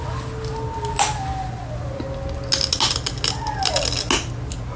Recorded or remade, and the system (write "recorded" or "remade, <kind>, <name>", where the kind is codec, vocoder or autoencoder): recorded